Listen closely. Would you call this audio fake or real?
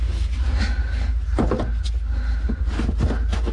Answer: real